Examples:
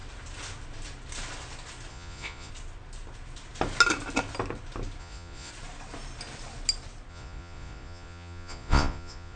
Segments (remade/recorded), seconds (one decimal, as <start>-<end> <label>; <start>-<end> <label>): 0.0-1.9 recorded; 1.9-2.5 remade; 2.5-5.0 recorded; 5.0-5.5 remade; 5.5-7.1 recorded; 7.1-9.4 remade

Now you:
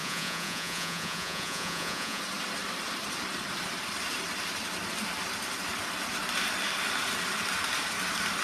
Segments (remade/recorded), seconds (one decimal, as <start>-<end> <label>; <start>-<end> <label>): 0.0-2.2 remade; 2.2-8.4 recorded

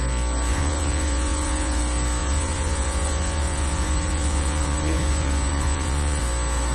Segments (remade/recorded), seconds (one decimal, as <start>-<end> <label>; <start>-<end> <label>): 0.0-0.5 recorded; 0.5-1.8 remade; 1.8-2.2 recorded; 2.2-6.2 remade; 6.2-6.7 recorded

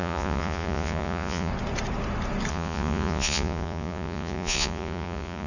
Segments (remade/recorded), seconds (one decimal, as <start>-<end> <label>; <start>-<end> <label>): 0.0-1.5 remade; 1.5-2.5 recorded; 2.5-5.5 remade